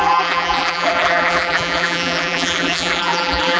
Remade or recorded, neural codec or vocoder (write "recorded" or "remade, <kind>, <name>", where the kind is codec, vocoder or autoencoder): remade, vocoder, BigVGAN v2